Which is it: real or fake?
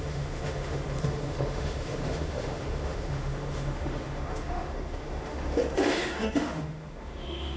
fake